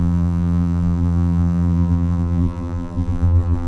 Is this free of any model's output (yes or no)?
no